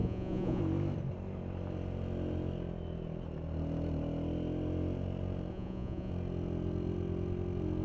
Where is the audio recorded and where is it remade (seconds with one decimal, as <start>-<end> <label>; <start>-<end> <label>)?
0.0-0.6 remade; 0.6-5.5 recorded; 5.5-6.1 remade; 6.1-7.8 recorded